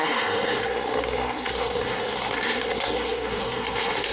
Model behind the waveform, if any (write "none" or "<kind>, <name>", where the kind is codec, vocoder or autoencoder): codec, SNAC